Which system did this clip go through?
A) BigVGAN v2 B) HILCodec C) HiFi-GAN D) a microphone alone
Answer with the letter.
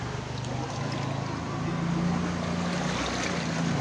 D